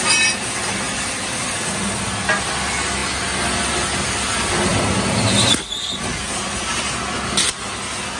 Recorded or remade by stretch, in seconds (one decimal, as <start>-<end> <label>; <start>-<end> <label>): 0.0-8.2 recorded